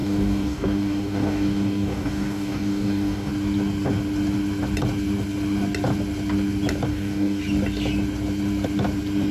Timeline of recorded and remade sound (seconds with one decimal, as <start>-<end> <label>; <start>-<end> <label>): 0.0-3.3 remade; 3.3-6.9 recorded; 6.9-7.4 remade; 7.4-9.3 recorded